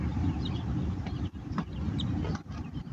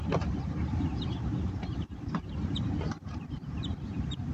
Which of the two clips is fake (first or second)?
second